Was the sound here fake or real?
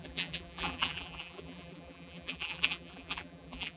fake